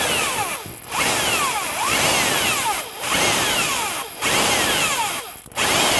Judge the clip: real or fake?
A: real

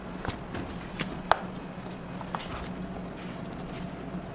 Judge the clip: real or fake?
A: real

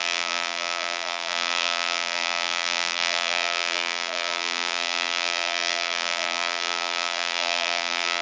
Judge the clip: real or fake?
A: fake